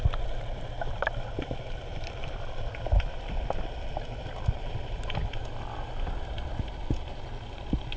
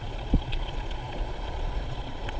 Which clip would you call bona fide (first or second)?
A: first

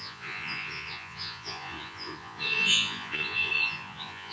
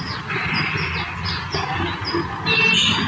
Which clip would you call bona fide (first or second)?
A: second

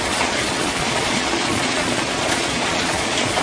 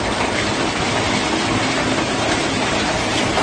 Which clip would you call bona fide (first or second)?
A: second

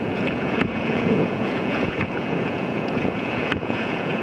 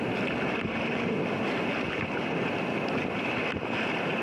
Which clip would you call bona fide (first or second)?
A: second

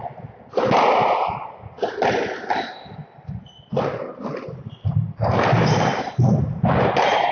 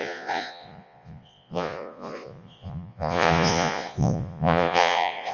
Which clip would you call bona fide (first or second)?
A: first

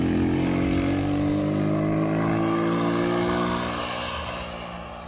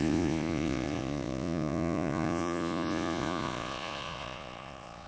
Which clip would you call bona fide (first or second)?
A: first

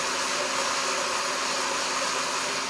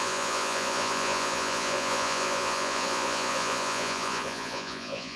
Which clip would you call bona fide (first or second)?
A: first